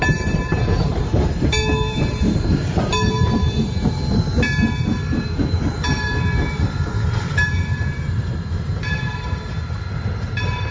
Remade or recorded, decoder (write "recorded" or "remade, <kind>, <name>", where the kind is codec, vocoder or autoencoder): remade, vocoder, BigVGAN v2